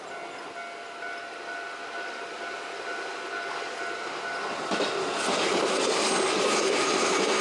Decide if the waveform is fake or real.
real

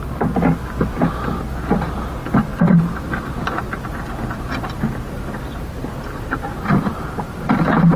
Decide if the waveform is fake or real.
real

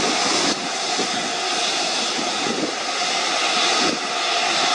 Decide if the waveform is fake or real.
real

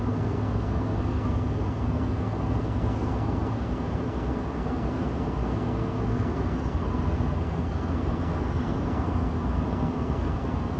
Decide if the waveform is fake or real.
fake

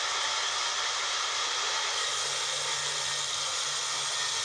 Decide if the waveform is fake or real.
real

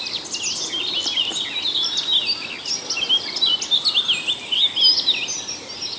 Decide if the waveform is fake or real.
real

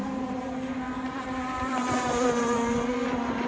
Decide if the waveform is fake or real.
fake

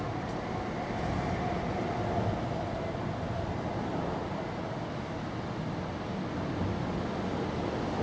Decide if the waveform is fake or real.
real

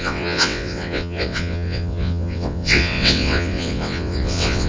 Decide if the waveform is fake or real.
fake